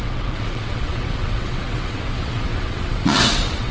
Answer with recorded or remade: remade